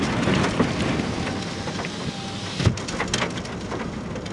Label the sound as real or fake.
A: real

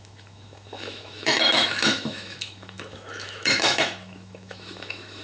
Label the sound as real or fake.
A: fake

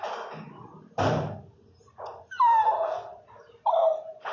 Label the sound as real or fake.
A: real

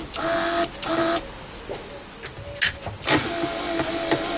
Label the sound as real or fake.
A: real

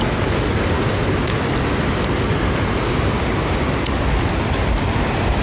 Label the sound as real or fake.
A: real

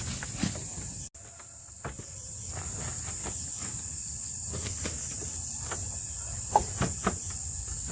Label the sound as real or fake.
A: real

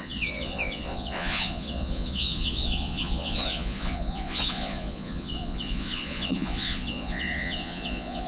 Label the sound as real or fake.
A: fake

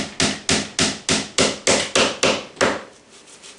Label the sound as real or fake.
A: real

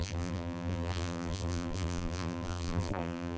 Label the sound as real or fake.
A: fake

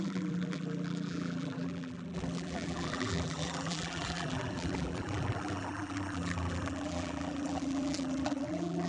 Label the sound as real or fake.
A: fake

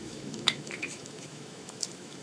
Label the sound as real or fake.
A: fake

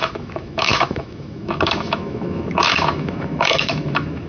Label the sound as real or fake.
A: fake